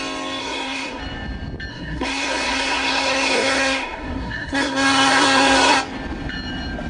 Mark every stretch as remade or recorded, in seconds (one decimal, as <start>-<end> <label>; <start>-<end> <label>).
0.0-0.4 recorded; 0.4-1.0 remade; 1.0-1.7 recorded; 1.7-5.8 remade; 5.8-6.9 recorded